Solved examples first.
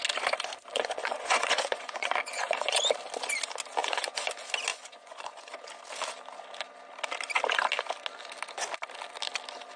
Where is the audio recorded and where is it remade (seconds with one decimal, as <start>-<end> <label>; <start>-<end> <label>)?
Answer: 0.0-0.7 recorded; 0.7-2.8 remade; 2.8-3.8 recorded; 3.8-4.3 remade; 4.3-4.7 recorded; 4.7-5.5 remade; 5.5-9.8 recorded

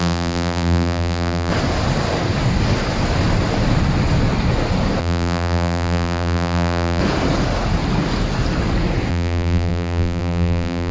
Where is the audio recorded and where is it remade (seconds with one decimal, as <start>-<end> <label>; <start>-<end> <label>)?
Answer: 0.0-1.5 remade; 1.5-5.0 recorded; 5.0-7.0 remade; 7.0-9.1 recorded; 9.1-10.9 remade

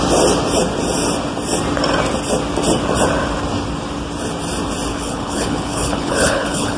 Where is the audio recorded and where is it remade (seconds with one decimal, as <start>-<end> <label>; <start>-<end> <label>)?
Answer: 0.0-4.9 recorded; 4.9-6.8 remade

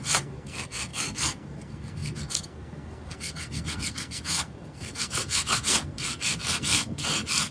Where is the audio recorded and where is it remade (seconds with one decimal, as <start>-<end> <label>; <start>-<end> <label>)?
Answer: 0.0-7.5 remade

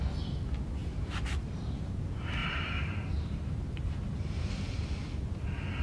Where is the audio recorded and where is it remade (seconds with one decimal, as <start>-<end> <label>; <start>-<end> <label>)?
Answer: 0.0-0.8 recorded; 0.8-2.0 remade; 2.0-2.4 recorded; 2.4-4.9 remade; 4.9-5.8 recorded

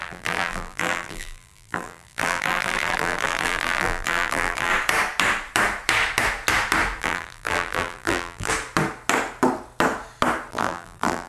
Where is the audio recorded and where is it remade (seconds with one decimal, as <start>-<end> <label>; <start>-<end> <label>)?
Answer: 0.0-4.7 remade; 4.7-7.0 recorded; 7.0-8.5 remade; 8.5-10.5 recorded; 10.5-11.3 remade

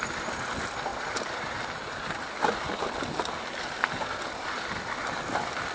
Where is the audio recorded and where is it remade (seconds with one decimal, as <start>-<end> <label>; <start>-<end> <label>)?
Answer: 0.0-5.7 recorded

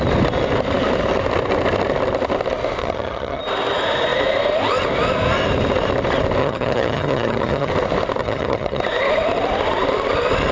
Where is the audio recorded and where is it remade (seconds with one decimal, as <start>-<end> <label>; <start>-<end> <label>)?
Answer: 0.0-2.8 recorded; 2.8-3.4 remade; 3.4-6.4 recorded; 6.4-7.7 remade; 7.7-8.2 recorded; 8.2-8.8 remade; 8.8-10.5 recorded